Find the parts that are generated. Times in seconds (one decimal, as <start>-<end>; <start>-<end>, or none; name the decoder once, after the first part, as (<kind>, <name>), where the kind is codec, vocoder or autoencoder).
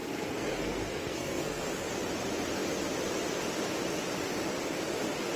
0.0-1.7 (codec, SNAC)